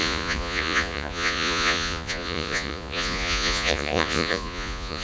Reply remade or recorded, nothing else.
remade